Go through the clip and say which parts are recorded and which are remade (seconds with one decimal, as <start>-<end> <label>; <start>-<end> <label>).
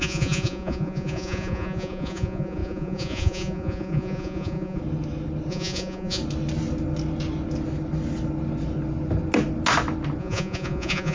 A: 0.0-4.8 remade; 4.8-5.5 recorded; 5.5-6.2 remade; 6.2-10.2 recorded; 10.2-11.1 remade